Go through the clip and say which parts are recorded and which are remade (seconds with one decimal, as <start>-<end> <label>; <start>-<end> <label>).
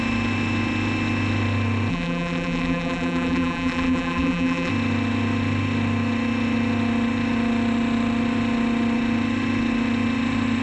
0.0-1.9 recorded; 1.9-4.7 remade; 4.7-10.6 recorded